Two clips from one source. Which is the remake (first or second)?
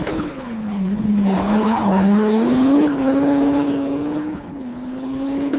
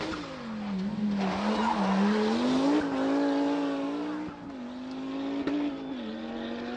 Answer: first